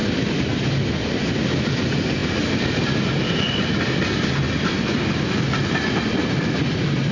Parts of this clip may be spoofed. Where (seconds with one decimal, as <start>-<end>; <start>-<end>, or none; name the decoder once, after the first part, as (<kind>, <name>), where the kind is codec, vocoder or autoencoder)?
none